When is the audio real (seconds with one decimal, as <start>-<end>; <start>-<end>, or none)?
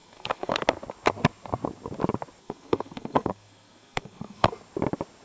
0.6-2.4; 4.5-5.2